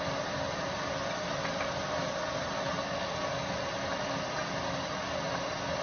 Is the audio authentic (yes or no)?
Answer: yes